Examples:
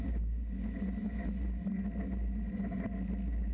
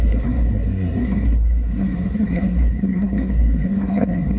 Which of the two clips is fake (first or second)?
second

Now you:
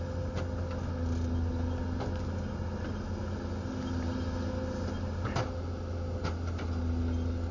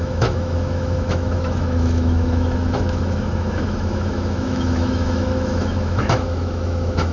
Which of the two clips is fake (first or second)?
second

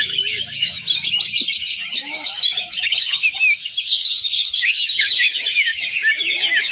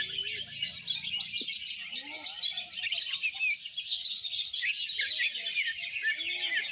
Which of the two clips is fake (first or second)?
first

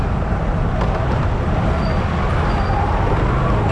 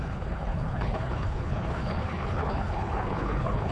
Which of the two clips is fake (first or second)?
second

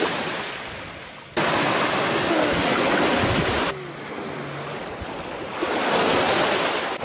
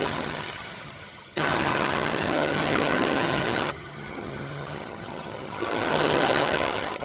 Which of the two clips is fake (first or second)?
second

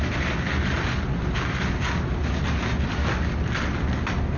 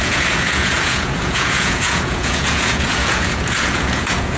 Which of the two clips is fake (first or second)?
second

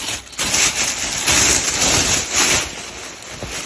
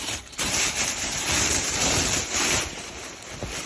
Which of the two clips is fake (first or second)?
second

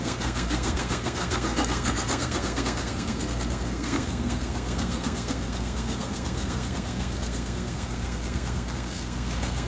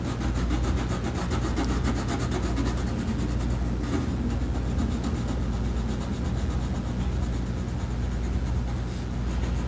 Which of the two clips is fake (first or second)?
first